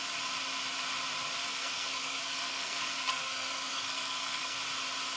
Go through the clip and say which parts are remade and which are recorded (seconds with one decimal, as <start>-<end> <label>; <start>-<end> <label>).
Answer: 0.0-1.5 recorded; 1.5-4.6 remade; 4.6-5.2 recorded